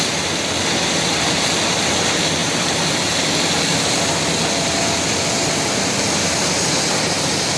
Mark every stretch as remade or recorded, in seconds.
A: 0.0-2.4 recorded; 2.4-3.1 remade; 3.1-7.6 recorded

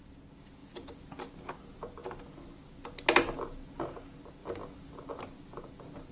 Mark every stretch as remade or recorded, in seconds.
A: 0.0-6.1 recorded

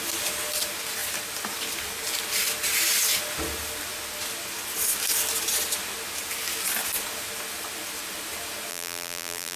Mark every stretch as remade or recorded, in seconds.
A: 0.0-8.7 recorded; 8.7-9.6 remade

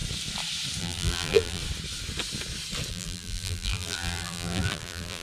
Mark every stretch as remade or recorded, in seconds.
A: 0.0-0.8 recorded; 0.8-1.6 remade; 1.6-2.9 recorded; 2.9-5.2 remade